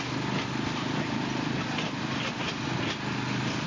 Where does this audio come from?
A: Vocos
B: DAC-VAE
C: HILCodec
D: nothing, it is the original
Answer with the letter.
D